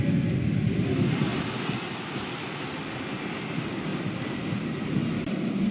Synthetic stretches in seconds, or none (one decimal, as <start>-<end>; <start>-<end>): 1.3-3.4; 3.9-4.7